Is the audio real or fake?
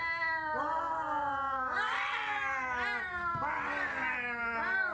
real